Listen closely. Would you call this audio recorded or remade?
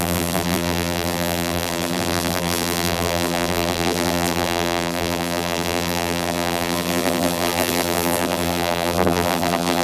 remade